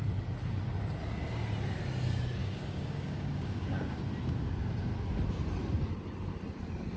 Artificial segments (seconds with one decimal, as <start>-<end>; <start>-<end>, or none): 2.4-4.0